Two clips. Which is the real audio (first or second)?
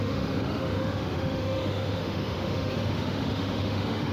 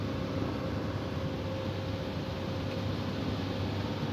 second